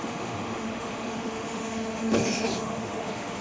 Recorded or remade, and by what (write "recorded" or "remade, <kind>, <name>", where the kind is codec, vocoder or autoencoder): remade, autoencoder, DAC-VAE